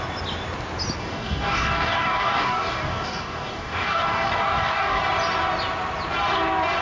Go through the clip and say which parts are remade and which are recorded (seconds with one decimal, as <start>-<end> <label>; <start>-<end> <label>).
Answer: 0.0-1.0 recorded; 1.0-5.0 remade; 5.0-6.8 recorded